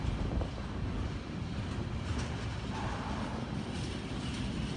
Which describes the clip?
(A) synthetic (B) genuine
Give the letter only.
B